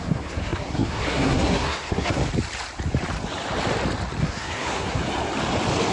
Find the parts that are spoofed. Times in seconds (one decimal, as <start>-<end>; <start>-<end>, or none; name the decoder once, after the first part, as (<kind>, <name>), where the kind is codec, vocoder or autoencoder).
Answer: 0.0-2.2 (codec, SNAC); 4.2-5.0